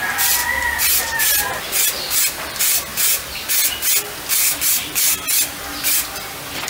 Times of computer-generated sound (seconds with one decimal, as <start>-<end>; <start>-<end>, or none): none